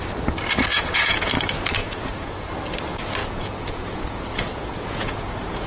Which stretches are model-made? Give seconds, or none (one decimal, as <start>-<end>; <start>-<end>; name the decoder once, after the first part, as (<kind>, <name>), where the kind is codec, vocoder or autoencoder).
0.7-1.3 (vocoder, Vocos); 1.8-2.5; 3.2-5.7

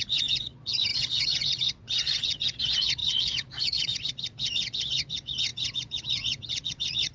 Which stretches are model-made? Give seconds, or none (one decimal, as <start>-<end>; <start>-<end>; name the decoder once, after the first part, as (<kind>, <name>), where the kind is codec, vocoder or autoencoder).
0.0-7.1 (vocoder, Vocos)